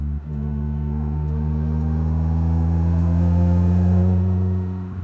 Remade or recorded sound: remade